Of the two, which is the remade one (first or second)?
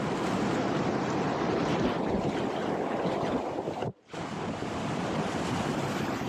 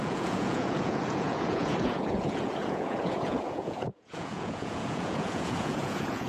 second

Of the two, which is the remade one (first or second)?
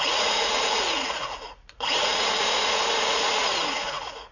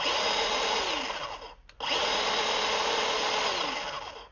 first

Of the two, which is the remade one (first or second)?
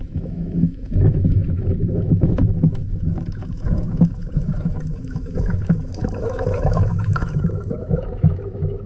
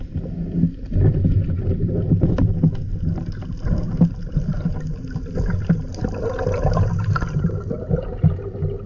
first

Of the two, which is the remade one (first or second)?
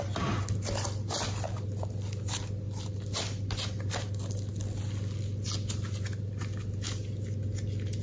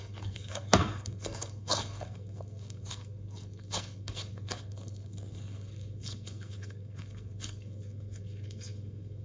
second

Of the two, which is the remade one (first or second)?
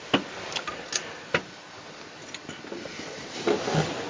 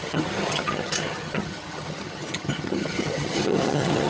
second